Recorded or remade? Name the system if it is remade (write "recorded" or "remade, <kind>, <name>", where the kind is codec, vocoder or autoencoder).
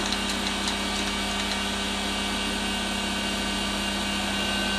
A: recorded